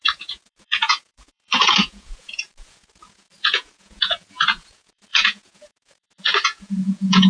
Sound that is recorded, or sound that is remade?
remade